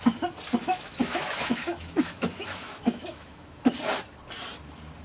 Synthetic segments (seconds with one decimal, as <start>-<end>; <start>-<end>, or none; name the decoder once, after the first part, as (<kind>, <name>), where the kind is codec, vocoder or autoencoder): 0.7-3.7 (autoencoder, DAC-VAE)